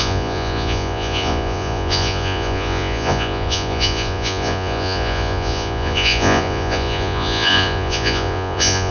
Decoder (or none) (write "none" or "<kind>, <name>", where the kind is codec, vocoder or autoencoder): vocoder, Vocos